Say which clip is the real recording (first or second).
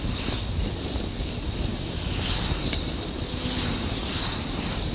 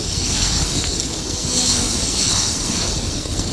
first